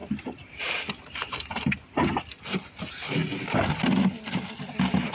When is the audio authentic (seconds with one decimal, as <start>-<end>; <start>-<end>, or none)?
1.5-5.1